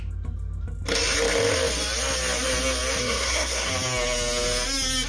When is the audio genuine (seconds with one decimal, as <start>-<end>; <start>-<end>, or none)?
0.0-3.0; 3.7-5.1